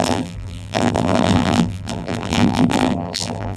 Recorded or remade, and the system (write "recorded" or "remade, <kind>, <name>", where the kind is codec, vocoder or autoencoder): remade, vocoder, BigVGAN v2